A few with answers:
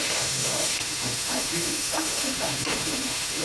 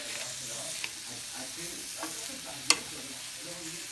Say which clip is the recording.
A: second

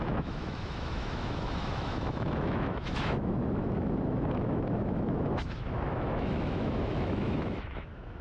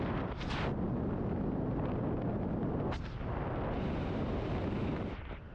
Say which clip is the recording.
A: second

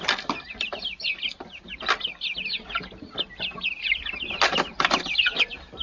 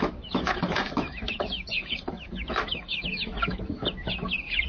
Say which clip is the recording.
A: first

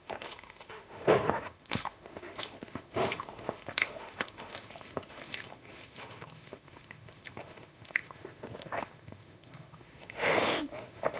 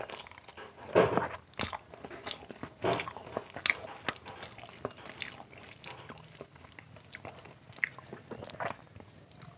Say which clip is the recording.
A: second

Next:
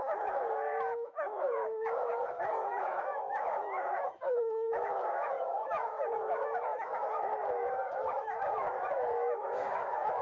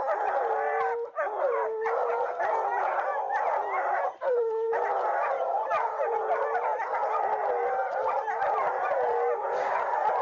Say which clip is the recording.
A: second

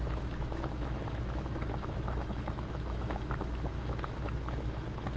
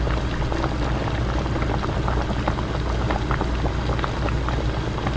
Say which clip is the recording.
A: second